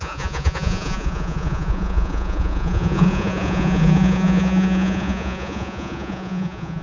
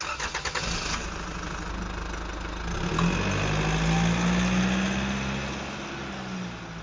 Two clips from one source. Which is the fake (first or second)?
first